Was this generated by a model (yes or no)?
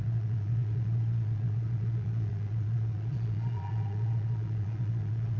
yes